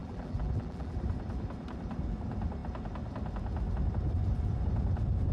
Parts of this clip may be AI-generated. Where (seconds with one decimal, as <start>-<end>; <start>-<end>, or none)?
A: 0.0-1.0